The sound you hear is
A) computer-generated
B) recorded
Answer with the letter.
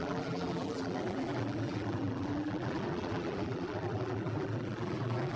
A